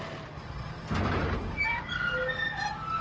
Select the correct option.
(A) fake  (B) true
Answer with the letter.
B